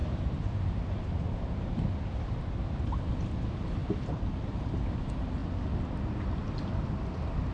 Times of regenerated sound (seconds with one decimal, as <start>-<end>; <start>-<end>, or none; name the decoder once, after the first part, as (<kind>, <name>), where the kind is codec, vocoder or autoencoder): 0.0-1.0 (vocoder, BigVGAN v2); 3.8-4.7